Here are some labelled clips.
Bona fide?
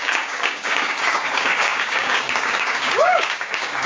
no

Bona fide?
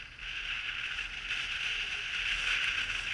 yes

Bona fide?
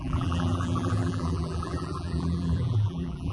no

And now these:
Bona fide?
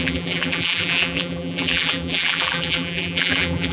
no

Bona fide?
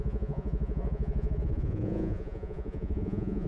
no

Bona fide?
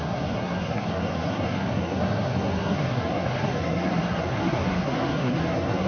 no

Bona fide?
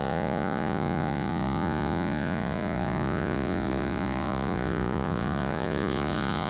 no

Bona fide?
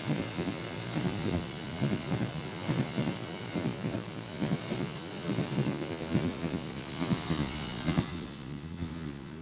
no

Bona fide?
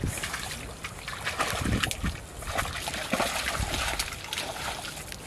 yes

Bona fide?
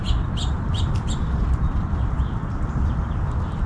yes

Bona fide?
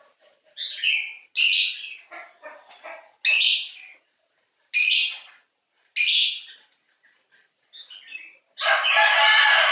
yes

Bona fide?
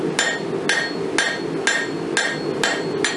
yes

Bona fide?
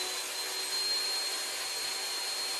yes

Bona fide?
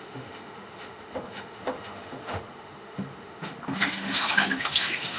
no